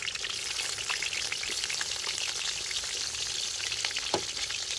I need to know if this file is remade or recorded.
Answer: recorded